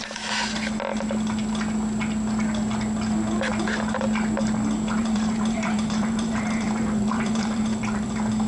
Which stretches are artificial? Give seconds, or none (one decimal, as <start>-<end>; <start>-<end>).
5.0-8.1